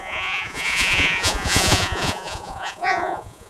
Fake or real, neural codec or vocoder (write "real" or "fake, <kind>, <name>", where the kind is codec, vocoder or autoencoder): fake, vocoder, Vocos